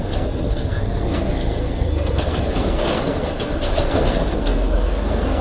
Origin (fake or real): fake